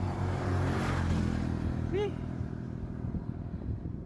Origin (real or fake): fake